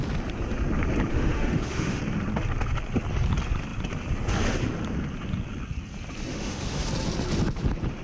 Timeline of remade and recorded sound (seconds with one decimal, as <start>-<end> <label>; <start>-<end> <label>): 0.0-1.1 recorded; 1.1-2.0 remade; 2.0-6.3 recorded; 6.3-6.9 remade; 6.9-8.0 recorded